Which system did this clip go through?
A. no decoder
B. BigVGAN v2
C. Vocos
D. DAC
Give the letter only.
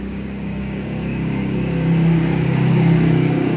D